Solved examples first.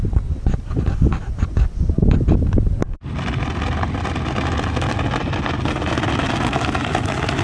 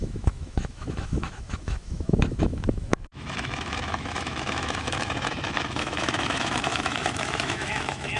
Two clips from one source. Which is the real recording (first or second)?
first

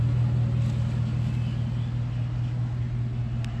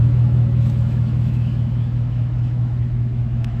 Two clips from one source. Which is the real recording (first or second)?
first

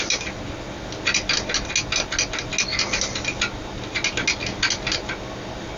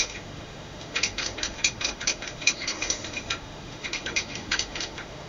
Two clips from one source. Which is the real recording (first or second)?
first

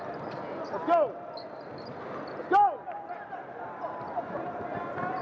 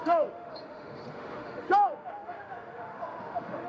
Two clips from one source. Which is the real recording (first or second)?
first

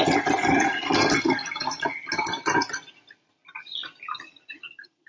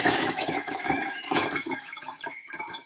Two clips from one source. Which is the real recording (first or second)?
first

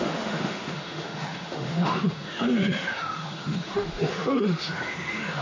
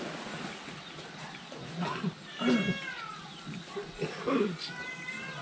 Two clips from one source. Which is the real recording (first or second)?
second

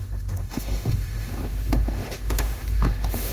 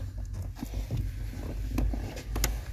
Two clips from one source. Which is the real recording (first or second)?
second